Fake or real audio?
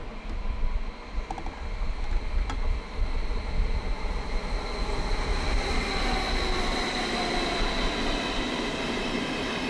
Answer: real